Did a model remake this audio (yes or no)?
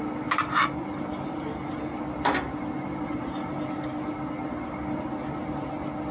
no